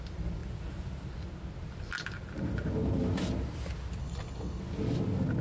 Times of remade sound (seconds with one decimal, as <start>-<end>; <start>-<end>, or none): 4.0-4.6